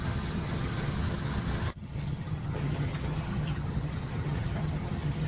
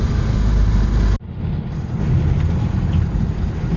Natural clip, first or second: second